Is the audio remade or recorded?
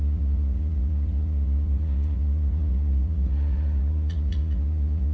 remade